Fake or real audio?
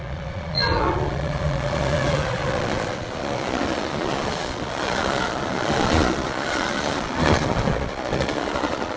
fake